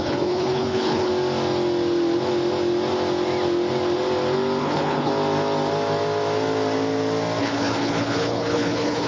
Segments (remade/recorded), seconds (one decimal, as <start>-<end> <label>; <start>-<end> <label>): 0.0-1.1 remade; 1.1-4.6 recorded; 4.6-5.1 remade; 5.1-7.4 recorded; 7.4-9.1 remade